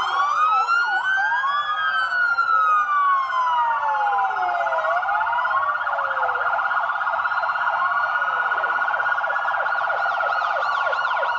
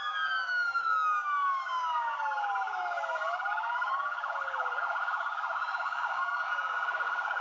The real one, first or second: first